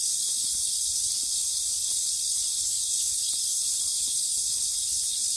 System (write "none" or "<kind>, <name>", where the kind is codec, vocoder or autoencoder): codec, HILCodec